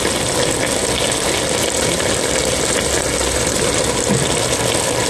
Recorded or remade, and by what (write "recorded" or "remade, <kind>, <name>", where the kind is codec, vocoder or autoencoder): recorded